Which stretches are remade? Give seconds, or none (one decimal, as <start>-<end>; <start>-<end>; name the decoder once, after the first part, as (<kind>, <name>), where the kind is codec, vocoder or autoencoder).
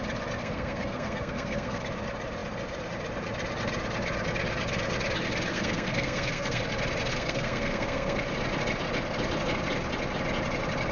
0.4-1.8 (codec, SNAC); 5.5-6.6; 7.1-8.2